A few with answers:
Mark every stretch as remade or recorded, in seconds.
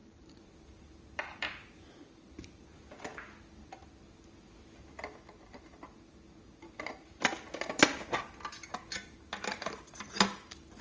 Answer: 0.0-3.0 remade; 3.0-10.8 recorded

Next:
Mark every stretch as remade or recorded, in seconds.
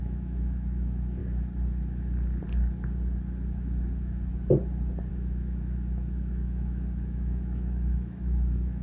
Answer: 0.0-1.2 remade; 1.2-5.1 recorded; 5.1-8.8 remade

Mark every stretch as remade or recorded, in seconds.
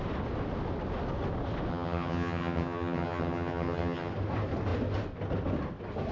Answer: 0.0-1.7 recorded; 1.7-4.1 remade; 4.1-6.1 recorded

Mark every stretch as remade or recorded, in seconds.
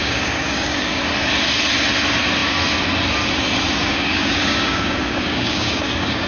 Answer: 0.0-1.0 remade; 1.0-3.8 recorded; 3.8-6.3 remade